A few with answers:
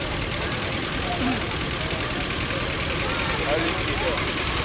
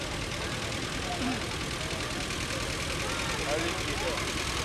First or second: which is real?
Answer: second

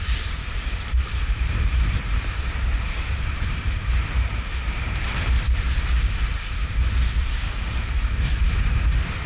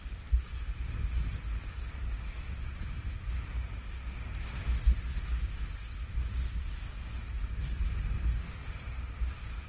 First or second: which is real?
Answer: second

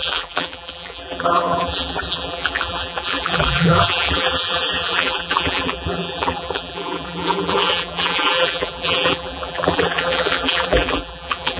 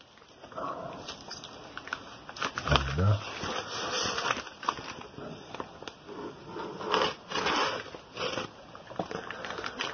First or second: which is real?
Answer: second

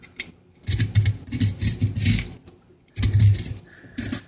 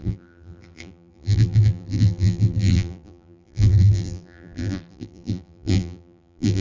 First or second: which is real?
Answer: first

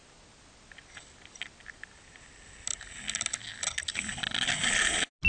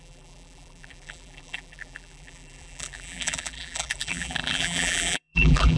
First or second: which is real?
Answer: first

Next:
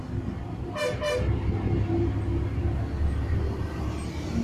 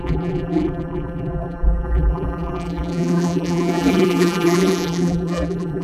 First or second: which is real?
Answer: first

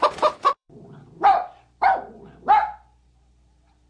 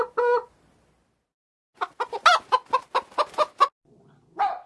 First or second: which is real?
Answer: second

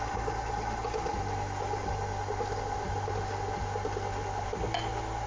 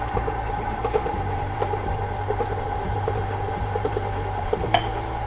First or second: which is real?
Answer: first